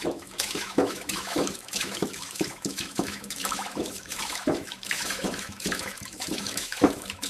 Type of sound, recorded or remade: remade